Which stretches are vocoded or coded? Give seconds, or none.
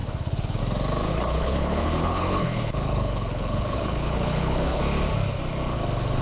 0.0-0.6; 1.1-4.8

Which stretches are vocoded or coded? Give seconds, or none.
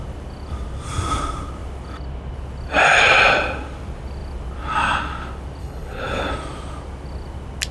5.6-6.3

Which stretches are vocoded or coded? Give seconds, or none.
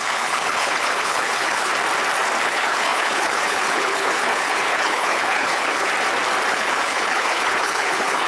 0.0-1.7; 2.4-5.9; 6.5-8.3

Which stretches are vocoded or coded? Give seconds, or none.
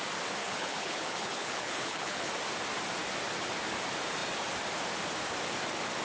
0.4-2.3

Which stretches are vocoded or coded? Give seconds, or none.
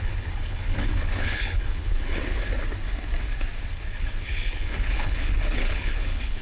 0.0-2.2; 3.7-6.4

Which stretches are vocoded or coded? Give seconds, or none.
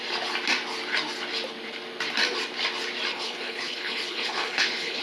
3.1-5.0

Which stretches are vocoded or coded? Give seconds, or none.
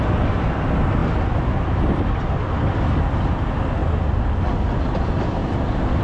none